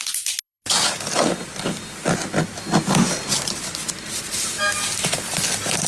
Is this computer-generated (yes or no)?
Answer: no